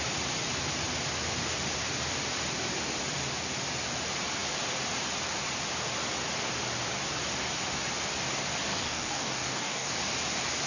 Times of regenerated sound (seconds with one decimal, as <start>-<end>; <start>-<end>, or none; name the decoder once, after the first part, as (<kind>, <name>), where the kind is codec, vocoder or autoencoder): 8.7-9.9 (codec, DAC)